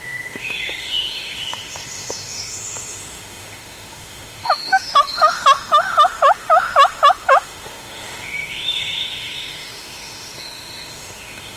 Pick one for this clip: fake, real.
fake